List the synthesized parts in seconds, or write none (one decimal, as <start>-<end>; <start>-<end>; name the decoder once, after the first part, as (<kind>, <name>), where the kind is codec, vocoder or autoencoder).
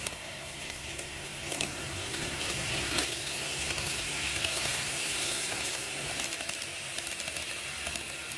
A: 0.0-6.1 (codec, SNAC)